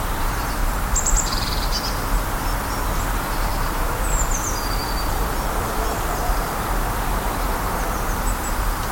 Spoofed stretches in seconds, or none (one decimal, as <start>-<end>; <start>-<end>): 0.6-1.8; 3.5-4.3; 4.8-6.6